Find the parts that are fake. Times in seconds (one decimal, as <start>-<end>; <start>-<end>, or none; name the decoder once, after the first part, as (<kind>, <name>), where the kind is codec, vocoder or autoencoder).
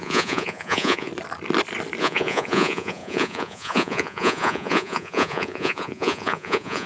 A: 0.0-1.1 (vocoder, Vocos); 2.0-6.9